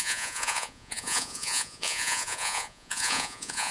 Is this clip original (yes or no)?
no